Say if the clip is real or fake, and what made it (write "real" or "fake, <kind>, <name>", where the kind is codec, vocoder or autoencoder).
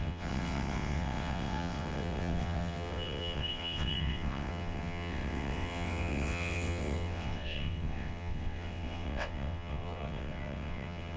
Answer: fake, vocoder, WaveNeXt